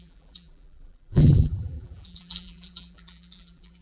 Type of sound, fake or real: fake